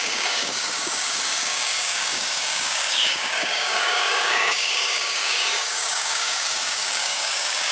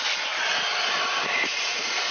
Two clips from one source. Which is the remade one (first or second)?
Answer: first